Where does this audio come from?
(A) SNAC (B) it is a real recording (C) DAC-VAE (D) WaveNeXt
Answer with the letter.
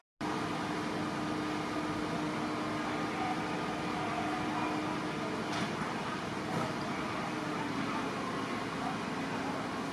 B